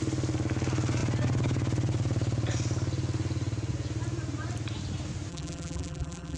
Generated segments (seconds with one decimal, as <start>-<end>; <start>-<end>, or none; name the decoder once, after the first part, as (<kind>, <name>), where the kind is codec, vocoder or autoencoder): 5.3-6.4 (vocoder, BigVGAN v2)